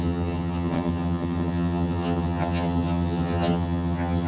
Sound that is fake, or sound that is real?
fake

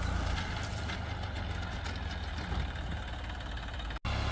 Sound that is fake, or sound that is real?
real